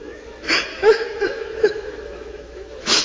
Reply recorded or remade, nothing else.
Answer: remade